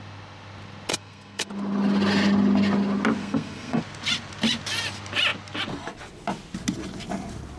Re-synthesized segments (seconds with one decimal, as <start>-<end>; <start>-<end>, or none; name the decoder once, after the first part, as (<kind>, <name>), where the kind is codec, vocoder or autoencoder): 0.9-1.5 (codec, SNAC); 3.2-3.8